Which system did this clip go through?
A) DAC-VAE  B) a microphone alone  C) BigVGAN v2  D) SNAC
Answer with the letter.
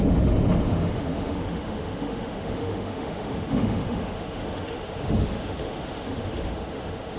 A